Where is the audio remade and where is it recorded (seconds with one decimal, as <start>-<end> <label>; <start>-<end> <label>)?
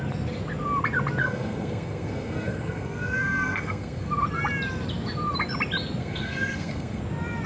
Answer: 0.0-1.2 recorded; 1.2-4.1 remade; 4.1-6.0 recorded; 6.0-7.0 remade; 7.0-7.5 recorded